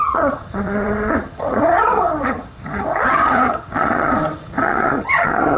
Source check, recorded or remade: remade